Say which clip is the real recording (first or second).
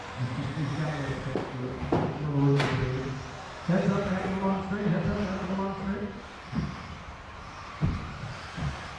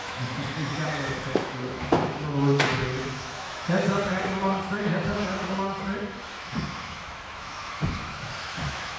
first